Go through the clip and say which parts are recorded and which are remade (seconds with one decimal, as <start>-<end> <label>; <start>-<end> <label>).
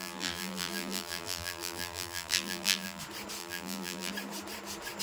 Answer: 0.0-3.0 remade; 3.0-3.4 recorded; 3.4-4.1 remade; 4.1-5.0 recorded